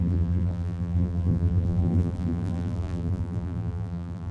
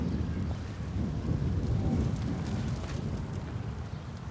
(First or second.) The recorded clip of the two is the second